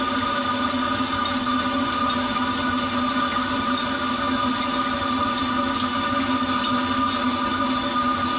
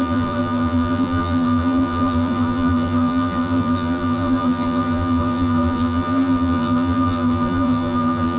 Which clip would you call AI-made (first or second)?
second